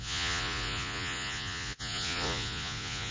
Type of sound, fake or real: fake